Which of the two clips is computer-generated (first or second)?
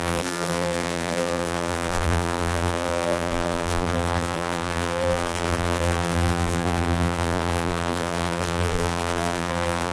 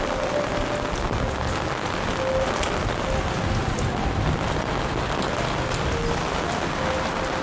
first